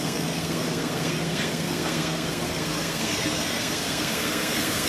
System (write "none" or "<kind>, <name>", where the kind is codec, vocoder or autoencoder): codec, SNAC